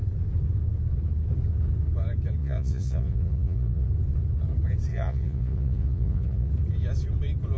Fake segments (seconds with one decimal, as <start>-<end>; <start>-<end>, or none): 2.4-3.9; 4.9-6.5